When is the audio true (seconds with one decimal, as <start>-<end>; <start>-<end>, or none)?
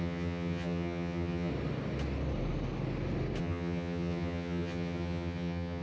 1.5-3.4